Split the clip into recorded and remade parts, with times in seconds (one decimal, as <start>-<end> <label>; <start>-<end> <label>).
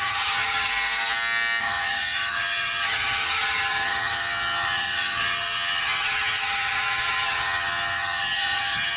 0.0-0.7 remade; 0.7-1.6 recorded; 1.6-9.0 remade